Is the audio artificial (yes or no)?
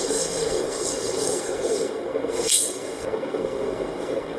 yes